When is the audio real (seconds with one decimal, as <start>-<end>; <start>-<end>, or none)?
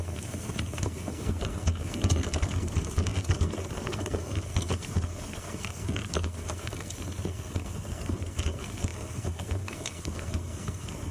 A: none